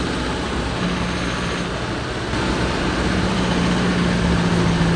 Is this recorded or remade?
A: recorded